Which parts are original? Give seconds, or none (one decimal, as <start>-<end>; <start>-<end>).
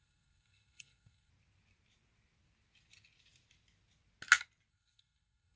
1.3-4.7